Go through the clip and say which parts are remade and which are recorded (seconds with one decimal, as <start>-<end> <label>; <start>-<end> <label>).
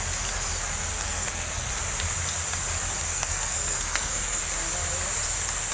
0.0-0.9 recorded; 0.9-1.7 remade; 1.7-3.1 recorded; 3.1-4.4 remade; 4.4-5.7 recorded